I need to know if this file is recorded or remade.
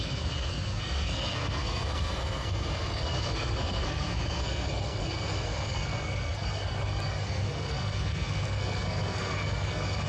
remade